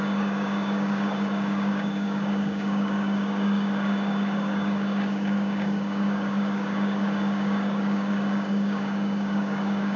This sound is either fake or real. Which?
fake